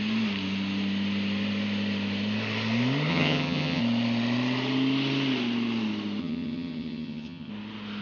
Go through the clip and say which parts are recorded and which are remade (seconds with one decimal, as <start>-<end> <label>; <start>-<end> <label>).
0.0-3.1 recorded; 3.1-3.8 remade; 3.8-6.2 recorded; 6.2-7.5 remade; 7.5-8.0 recorded